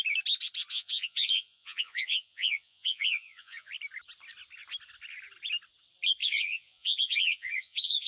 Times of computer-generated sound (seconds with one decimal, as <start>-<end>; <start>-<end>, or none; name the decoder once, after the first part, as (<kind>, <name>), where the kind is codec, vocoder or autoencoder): 0.7-3.7 (vocoder, Vocos); 6.2-8.1